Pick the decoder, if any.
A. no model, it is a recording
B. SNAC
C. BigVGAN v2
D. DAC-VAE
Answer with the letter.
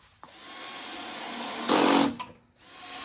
A